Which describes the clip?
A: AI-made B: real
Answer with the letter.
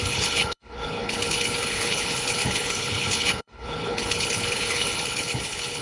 A